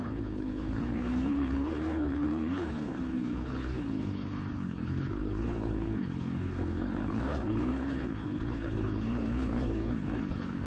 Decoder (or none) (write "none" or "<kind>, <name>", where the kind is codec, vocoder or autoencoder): codec, HILCodec